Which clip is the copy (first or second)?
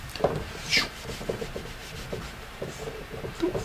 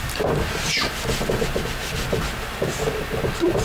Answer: first